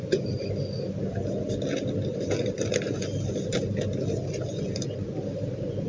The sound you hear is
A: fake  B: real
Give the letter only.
B